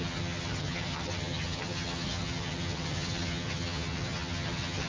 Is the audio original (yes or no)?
no